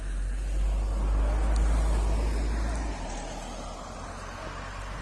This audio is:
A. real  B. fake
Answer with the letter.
A